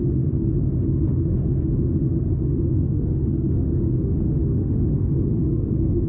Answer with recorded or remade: remade